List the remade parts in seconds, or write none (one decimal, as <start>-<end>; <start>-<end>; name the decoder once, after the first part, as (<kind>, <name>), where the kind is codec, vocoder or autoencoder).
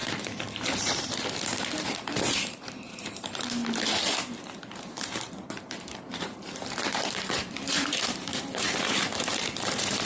1.8-3.6 (vocoder, BigVGAN v2); 4.2-10.1